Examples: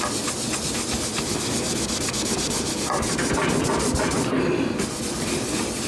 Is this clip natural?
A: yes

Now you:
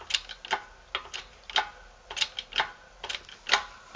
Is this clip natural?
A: yes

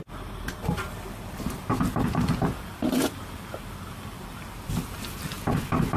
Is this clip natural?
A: yes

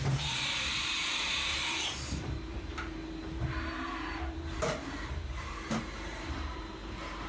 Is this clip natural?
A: no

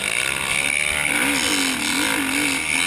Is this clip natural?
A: yes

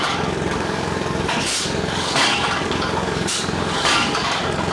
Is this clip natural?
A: no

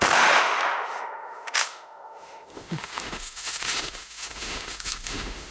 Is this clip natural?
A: no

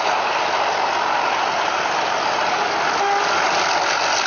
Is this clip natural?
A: yes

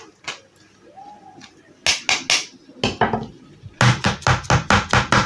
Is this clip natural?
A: yes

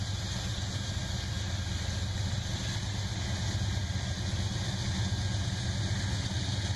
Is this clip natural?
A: yes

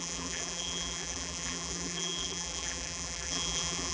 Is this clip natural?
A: no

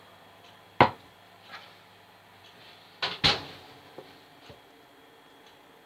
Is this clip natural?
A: yes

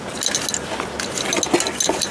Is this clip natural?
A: yes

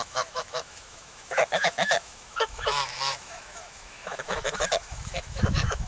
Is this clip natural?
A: no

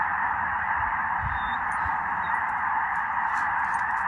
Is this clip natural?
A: yes